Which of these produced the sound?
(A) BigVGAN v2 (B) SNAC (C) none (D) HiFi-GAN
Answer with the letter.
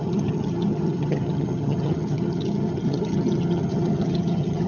D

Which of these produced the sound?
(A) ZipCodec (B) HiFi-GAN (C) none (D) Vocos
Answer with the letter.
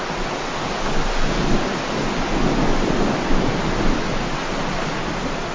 C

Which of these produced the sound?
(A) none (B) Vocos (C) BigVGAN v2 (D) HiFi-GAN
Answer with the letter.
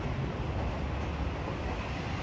A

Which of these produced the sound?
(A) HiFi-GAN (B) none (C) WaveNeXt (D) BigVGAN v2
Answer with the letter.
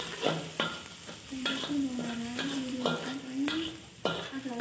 B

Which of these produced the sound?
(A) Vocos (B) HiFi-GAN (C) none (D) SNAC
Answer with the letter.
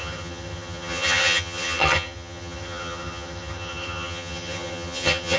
B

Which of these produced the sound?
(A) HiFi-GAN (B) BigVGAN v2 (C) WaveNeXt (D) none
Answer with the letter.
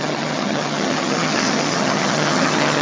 A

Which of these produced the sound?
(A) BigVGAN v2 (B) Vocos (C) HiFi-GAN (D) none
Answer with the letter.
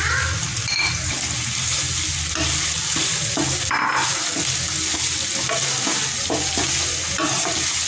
D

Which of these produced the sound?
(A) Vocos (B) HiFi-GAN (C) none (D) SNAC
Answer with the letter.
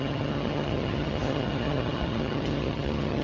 B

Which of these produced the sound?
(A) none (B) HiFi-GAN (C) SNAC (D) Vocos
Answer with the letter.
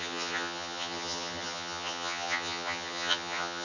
B